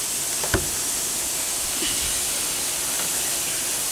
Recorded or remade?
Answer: recorded